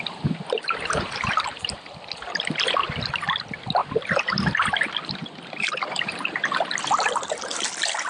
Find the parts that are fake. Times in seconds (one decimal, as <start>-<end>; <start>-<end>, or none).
5.2-6.8